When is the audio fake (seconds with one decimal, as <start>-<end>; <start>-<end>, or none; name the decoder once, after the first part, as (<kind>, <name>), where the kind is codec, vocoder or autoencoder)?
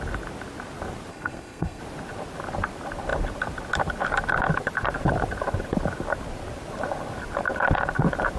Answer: 1.1-1.8 (codec, SNAC)